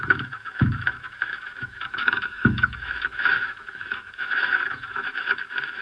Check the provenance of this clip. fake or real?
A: fake